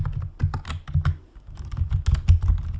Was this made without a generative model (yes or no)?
yes